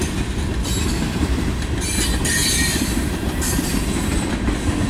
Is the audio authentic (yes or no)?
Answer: yes